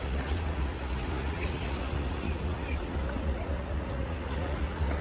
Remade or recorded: remade